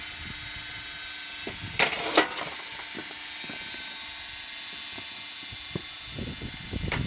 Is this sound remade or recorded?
recorded